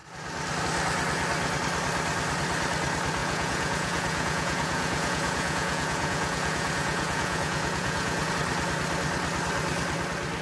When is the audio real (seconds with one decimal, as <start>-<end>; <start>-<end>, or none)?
0.0-3.2; 8.3-10.4